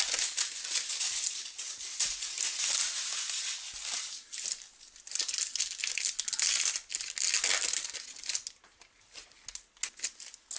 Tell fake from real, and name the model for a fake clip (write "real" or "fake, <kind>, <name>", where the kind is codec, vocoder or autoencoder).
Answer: real